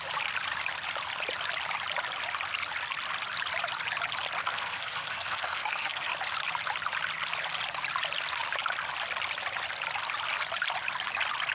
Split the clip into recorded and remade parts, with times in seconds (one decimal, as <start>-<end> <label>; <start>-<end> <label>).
0.0-4.4 recorded; 4.4-6.1 remade; 6.1-11.5 recorded